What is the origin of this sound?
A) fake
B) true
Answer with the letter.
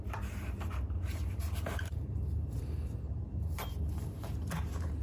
A